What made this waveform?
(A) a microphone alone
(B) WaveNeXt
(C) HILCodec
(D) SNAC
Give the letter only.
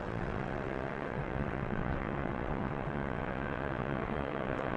B